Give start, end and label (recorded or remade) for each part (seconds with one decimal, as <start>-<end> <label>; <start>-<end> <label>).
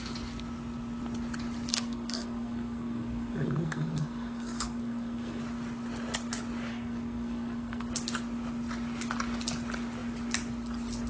0.0-1.7 recorded; 1.7-5.4 remade; 5.4-6.7 recorded; 6.7-7.9 remade; 7.9-11.1 recorded